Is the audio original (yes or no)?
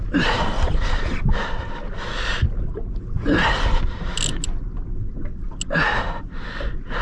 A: yes